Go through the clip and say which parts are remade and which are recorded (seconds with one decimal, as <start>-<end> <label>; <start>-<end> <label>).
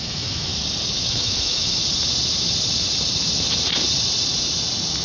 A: 0.0-0.5 remade; 0.5-1.1 recorded; 1.1-1.8 remade; 1.8-5.0 recorded